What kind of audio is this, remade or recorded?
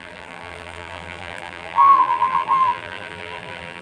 remade